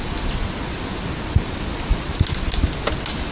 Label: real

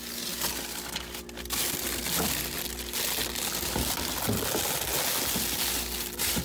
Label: real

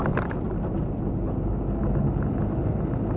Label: real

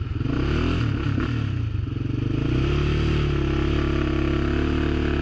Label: real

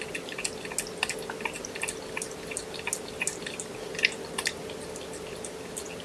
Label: real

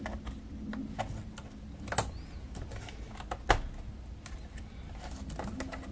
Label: real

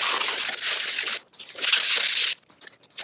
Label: real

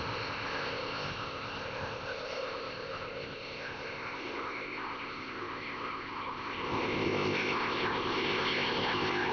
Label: fake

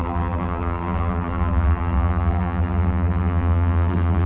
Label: fake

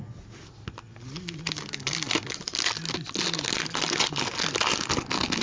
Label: real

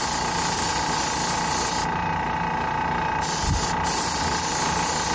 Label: real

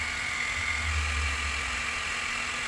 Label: real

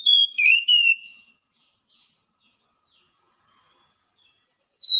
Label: fake